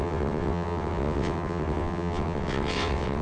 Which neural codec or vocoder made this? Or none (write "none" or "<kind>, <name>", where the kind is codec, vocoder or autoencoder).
vocoder, WaveNeXt